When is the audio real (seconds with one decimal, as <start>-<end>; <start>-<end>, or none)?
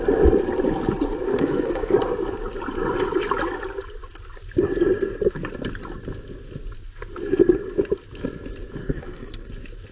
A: 0.0-1.3; 1.9-8.8; 9.5-9.9